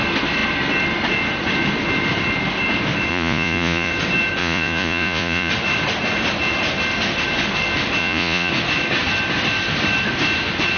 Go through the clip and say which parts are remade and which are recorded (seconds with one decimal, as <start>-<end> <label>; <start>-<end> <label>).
0.0-3.1 recorded; 3.1-3.9 remade; 3.9-4.4 recorded; 4.4-5.5 remade; 5.5-8.0 recorded; 8.0-8.5 remade; 8.5-10.8 recorded